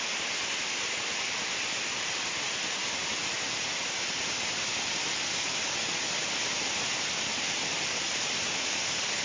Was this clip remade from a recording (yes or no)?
no